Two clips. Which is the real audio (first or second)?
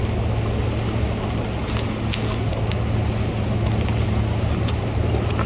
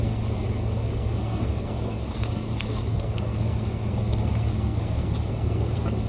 first